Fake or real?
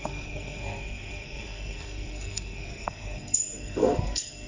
fake